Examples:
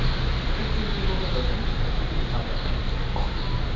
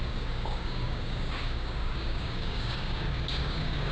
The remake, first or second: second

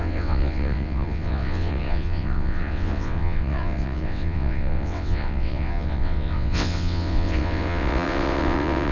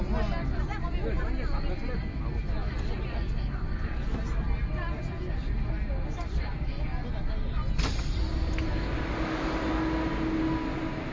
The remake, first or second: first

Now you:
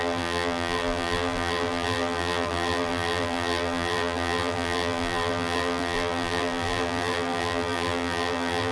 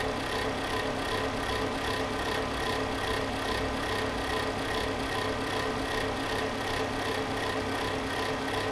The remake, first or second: first